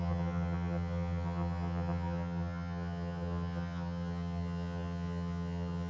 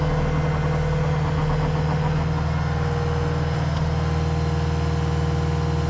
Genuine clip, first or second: second